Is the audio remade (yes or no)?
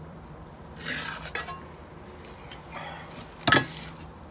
no